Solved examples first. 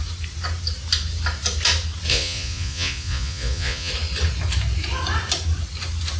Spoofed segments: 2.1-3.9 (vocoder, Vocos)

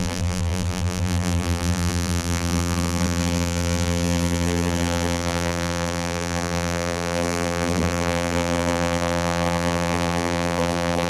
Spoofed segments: 0.0-11.1 (vocoder, BigVGAN v2)

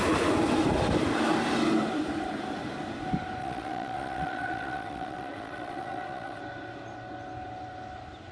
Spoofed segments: 3.4-6.4 (vocoder, Vocos)

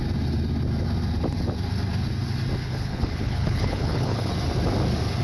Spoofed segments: 2.6-4.3 (codec, HILCodec)

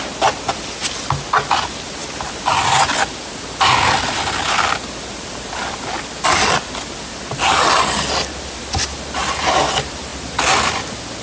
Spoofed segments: none